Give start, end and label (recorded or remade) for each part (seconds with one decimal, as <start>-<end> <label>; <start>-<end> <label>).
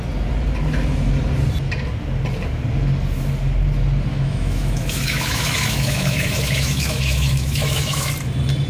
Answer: 0.0-4.1 recorded; 4.1-8.1 remade; 8.1-8.7 recorded